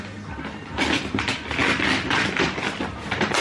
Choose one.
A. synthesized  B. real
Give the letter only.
B